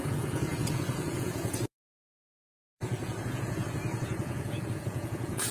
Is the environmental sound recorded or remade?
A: remade